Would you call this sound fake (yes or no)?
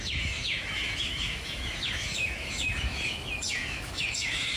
yes